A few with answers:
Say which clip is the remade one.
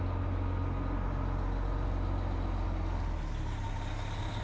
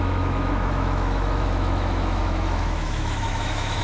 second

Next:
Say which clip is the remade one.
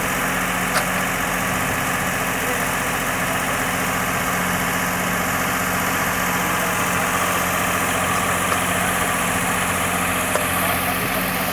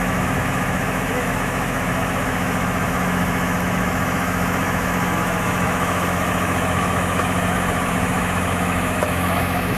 second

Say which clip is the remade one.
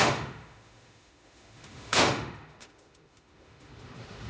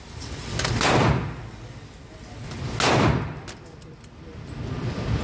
first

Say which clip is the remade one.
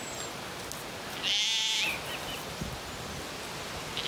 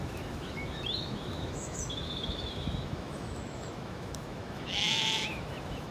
second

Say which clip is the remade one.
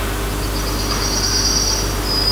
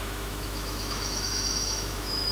second